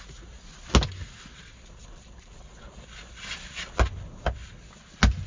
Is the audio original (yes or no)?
yes